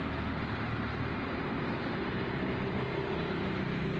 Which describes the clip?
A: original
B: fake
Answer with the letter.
A